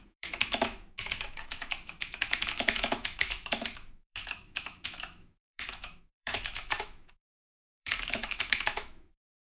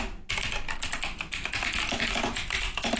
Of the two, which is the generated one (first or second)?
first